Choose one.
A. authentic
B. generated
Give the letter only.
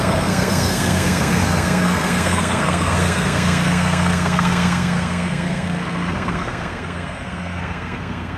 B